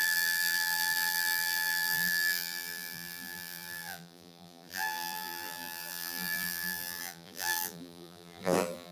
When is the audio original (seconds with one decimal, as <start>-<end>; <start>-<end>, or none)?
none